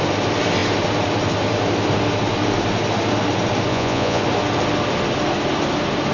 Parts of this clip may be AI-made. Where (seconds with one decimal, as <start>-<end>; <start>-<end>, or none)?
3.7-4.2